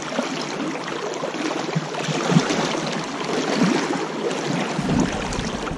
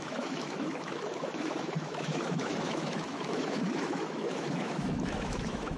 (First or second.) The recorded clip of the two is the first